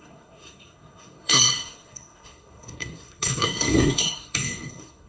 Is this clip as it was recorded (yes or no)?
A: no